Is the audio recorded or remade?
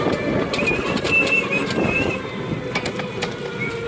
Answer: recorded